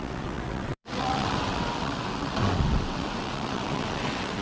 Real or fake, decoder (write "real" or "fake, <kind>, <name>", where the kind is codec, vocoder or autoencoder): fake, vocoder, WaveNeXt